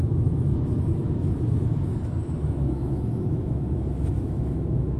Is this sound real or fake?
fake